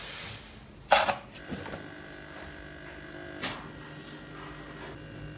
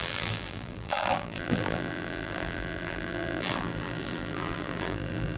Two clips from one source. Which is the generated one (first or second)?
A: second